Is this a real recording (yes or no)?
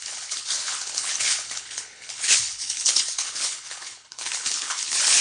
no